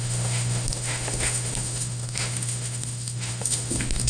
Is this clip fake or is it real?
fake